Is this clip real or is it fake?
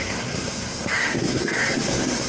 fake